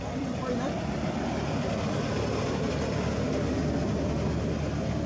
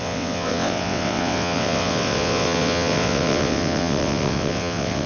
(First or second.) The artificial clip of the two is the second